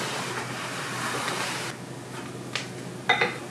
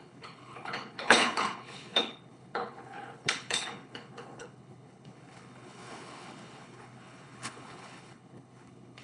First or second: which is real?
first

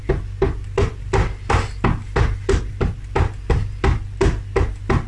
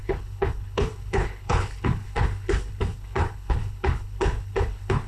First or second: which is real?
first